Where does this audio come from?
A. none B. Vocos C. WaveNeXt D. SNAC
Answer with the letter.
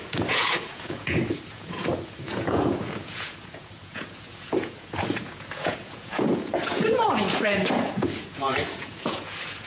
B